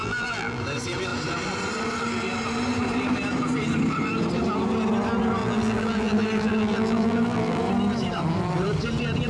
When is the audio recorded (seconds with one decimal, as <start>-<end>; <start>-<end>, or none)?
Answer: 0.6-5.4; 7.6-9.3